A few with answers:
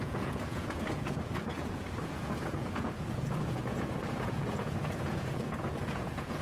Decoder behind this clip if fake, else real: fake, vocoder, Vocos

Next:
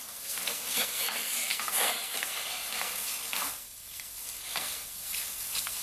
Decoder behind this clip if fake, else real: fake, codec, SNAC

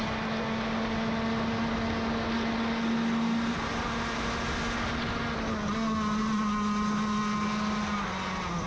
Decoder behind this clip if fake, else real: real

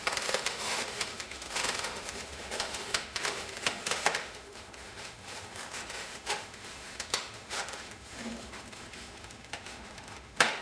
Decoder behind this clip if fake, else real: fake, autoencoder, DAC-VAE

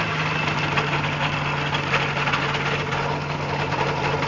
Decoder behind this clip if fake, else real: real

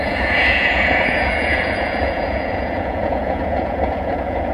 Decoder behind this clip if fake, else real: fake, vocoder, Vocos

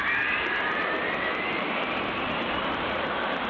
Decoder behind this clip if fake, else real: fake, vocoder, BigVGAN v2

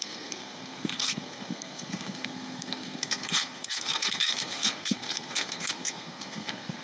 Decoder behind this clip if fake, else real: fake, codec, SNAC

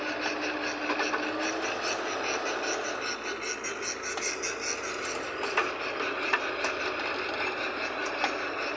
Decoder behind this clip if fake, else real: real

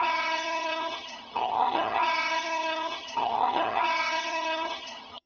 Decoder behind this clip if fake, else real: fake, vocoder, HiFi-GAN